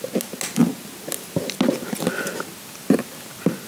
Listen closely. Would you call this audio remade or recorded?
recorded